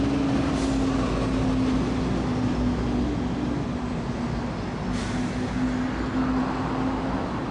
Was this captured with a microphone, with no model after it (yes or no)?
yes